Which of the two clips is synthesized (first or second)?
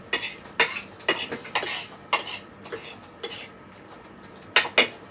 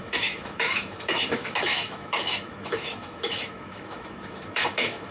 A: second